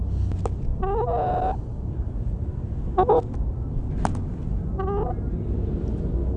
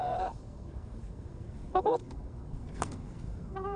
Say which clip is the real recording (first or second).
first